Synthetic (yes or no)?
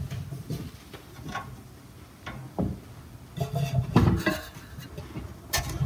no